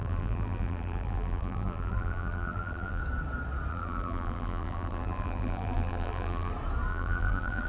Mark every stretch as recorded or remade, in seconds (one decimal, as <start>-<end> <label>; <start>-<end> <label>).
0.0-3.0 remade; 3.0-3.7 recorded; 3.7-6.5 remade; 6.5-6.9 recorded; 6.9-7.7 remade

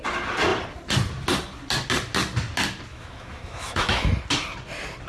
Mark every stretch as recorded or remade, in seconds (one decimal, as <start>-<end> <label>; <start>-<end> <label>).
0.0-2.9 recorded; 2.9-4.1 remade; 4.1-5.1 recorded

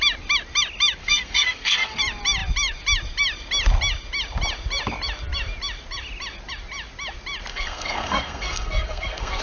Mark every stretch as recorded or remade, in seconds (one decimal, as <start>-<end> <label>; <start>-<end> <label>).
0.0-1.0 recorded; 1.0-2.0 remade; 2.0-7.5 recorded; 7.5-9.4 remade

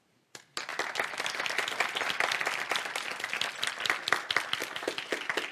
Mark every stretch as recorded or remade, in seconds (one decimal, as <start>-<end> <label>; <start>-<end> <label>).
0.0-2.4 recorded; 2.4-5.1 remade; 5.1-5.5 recorded

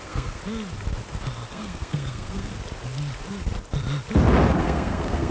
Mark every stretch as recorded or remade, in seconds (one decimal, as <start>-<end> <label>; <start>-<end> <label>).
0.0-0.4 remade; 0.4-1.5 recorded; 1.5-2.5 remade; 2.5-4.6 recorded; 4.6-5.3 remade